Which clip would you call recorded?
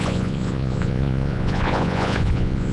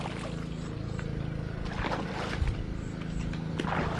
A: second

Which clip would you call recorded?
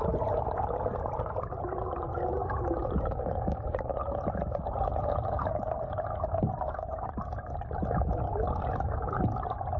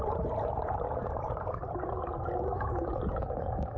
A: first